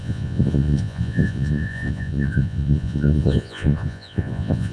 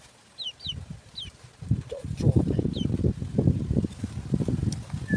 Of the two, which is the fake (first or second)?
first